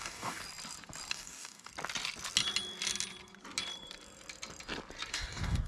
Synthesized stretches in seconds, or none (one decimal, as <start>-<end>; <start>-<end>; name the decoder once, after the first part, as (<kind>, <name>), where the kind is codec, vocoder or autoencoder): 0.0-0.4 (codec, DAC); 1.1-1.7; 5.1-5.7